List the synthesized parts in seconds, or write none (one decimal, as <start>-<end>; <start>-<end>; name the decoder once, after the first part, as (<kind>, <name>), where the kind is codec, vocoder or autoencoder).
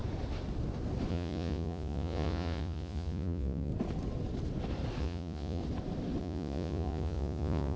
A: 1.1-3.7 (vocoder, Vocos); 5.0-5.6; 6.2-7.8